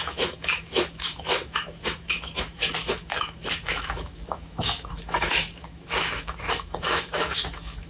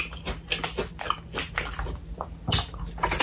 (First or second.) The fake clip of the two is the first